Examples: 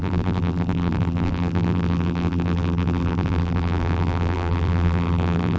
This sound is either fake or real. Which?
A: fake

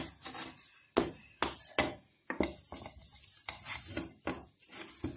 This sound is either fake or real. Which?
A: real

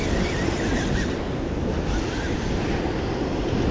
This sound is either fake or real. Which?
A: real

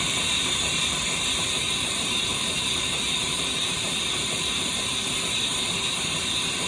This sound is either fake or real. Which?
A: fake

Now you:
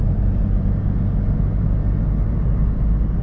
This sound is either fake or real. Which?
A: real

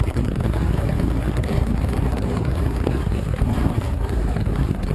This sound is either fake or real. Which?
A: fake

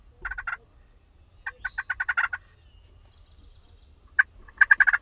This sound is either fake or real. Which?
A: real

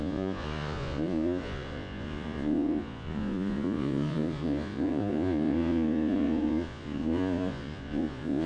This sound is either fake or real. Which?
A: fake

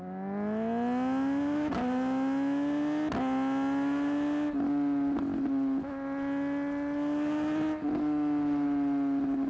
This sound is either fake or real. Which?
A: real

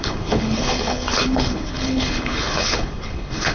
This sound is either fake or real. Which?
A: fake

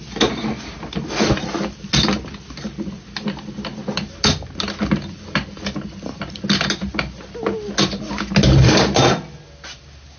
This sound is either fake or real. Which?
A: real